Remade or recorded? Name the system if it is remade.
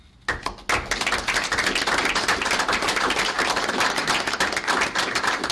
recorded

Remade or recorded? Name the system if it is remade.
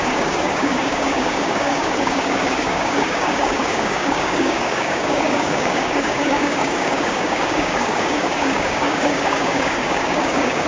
remade, codec, DAC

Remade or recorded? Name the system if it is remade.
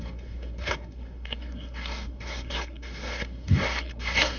remade, codec, SNAC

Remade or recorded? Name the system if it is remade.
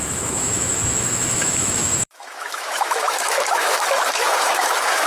remade, autoencoder, DAC-VAE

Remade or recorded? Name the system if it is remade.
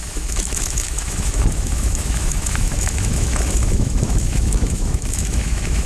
remade, autoencoder, DAC-VAE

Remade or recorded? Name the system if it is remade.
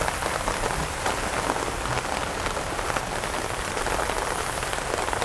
recorded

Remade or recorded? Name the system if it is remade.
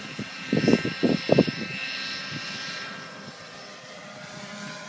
remade, vocoder, BigVGAN v2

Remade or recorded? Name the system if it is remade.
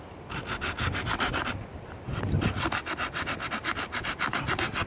recorded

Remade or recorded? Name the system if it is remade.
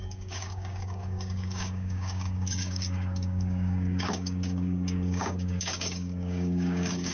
remade, codec, DAC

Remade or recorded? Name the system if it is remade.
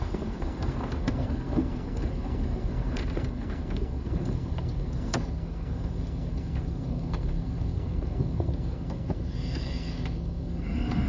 remade, codec, SNAC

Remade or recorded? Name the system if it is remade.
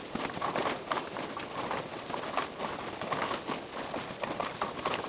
recorded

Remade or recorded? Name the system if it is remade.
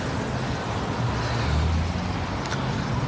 recorded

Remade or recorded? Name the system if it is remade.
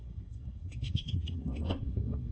remade, codec, SNAC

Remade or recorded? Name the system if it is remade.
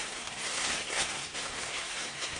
remade, codec, SNAC